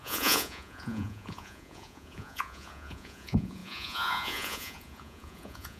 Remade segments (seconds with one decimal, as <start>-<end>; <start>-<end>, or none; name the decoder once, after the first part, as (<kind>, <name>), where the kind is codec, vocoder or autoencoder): 0.0-5.8 (vocoder, Vocos)